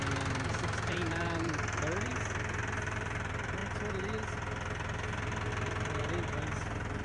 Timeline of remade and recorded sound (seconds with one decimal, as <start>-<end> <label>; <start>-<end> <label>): 0.0-2.1 remade; 2.1-2.6 recorded; 2.6-3.6 remade; 3.6-5.5 recorded; 5.5-7.0 remade